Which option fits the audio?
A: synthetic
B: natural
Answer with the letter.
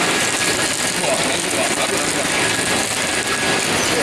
B